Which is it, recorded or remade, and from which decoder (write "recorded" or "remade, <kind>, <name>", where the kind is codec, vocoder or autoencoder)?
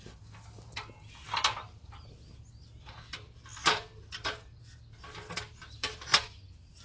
recorded